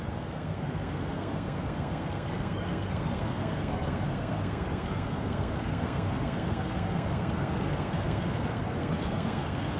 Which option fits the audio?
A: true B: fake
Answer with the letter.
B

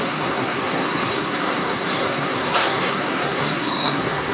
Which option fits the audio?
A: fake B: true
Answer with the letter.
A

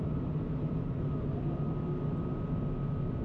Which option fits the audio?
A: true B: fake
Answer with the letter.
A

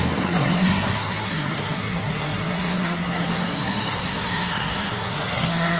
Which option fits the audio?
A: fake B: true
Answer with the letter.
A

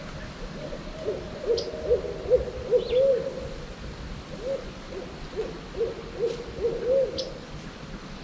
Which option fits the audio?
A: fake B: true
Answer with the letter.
B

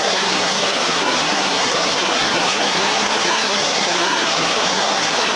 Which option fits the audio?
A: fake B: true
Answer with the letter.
A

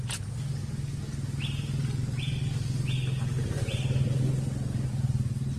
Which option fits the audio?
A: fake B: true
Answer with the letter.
B